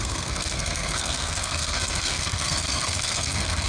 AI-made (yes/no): yes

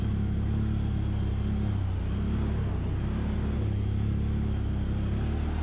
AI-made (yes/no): no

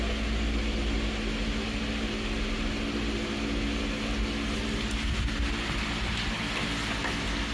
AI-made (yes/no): no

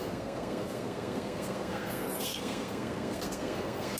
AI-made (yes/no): yes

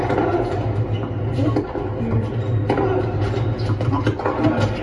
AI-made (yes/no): no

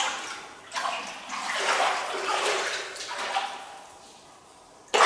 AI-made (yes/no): no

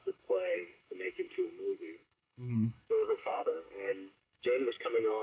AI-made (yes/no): yes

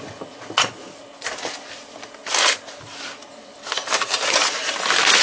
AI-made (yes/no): no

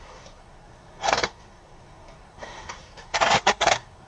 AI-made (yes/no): yes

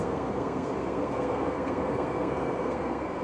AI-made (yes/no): yes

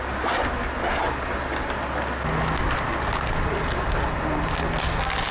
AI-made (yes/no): no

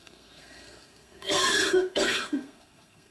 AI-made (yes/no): yes